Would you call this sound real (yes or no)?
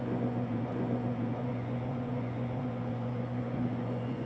no